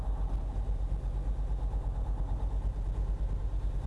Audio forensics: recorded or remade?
recorded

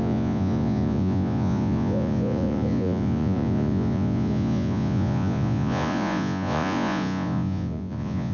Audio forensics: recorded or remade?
remade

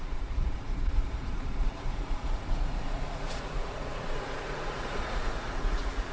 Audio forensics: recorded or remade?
remade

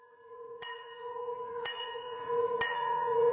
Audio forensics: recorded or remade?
remade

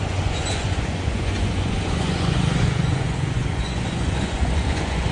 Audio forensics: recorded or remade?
remade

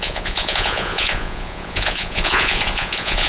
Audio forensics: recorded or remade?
remade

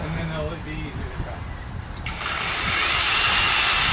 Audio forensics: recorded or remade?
recorded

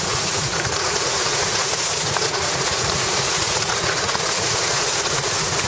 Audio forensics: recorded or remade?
remade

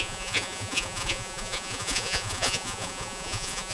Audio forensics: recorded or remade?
remade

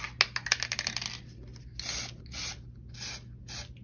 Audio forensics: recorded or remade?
recorded